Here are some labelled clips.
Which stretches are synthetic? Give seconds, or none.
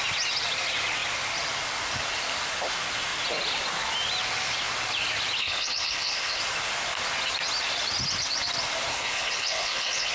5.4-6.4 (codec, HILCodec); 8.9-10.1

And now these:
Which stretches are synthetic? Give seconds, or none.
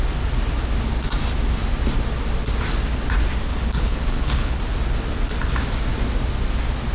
3.5-4.6 (codec, HILCodec)